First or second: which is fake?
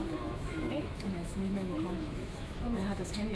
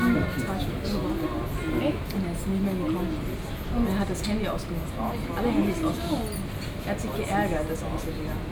first